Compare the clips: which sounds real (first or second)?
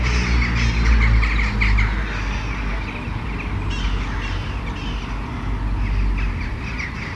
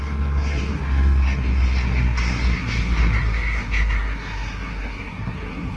first